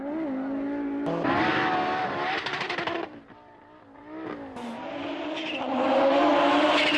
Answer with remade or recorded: recorded